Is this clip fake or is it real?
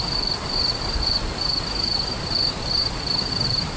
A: real